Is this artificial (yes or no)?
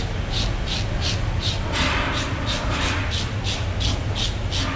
no